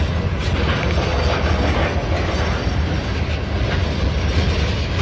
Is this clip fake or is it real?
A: real